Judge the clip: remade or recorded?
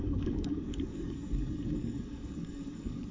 remade